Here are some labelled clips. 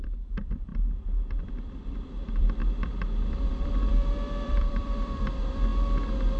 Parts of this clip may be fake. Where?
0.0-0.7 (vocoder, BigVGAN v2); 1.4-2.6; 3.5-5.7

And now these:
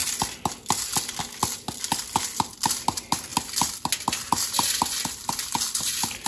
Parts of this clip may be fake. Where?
none

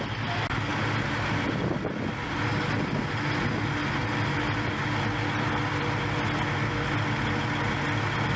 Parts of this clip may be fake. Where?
0.7-2.8 (vocoder, BigVGAN v2)

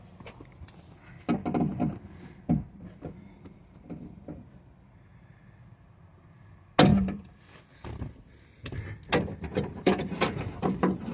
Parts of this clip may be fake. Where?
6.9-7.4 (vocoder, BigVGAN v2); 9.5-11.1

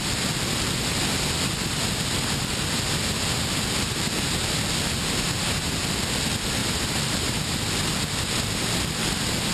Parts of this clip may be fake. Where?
6.6-7.7 (vocoder, BigVGAN v2)

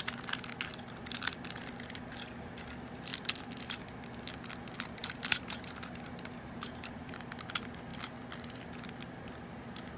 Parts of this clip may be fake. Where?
5.0-7.3 (vocoder, BigVGAN v2)